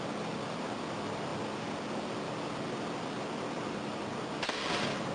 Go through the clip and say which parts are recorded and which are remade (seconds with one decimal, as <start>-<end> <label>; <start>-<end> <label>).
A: 0.0-5.1 recorded